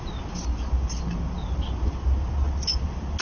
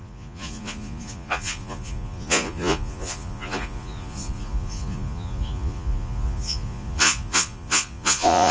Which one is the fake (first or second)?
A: second